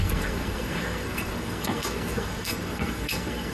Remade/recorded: remade